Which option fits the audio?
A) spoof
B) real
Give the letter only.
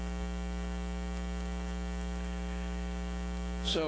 B